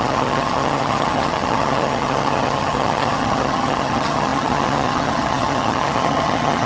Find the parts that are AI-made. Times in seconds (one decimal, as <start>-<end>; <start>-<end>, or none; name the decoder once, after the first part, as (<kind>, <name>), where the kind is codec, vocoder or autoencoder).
0.0-6.7 (vocoder, HiFi-GAN)